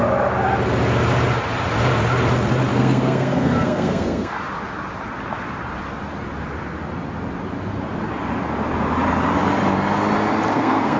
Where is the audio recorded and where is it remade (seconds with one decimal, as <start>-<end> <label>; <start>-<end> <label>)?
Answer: 0.0-2.7 recorded; 2.7-4.4 remade; 4.4-10.5 recorded; 10.5-11.0 remade